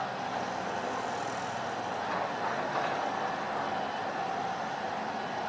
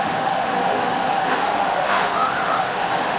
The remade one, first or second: second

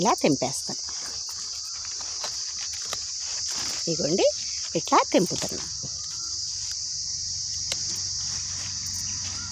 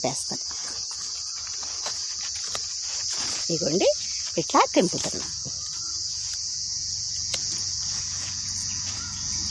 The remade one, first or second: second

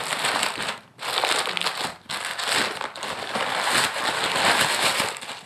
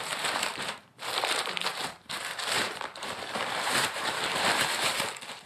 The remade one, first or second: second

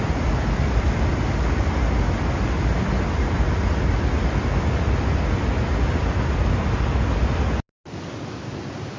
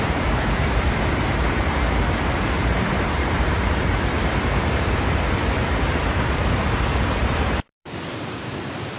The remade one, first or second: second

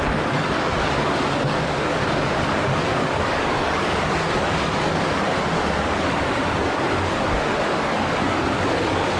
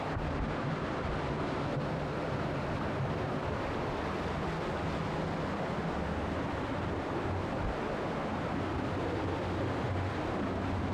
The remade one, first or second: first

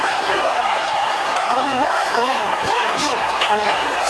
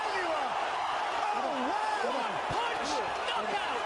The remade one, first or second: first